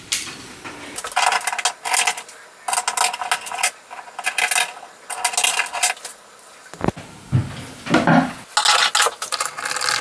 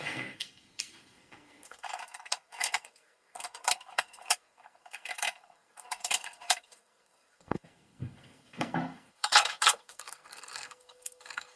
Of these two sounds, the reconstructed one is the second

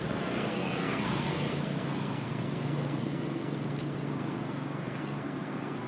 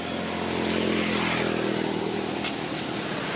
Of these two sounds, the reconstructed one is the first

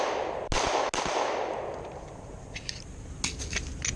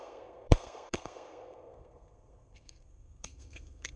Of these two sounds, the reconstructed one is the second